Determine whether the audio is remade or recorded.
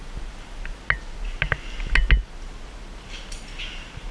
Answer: recorded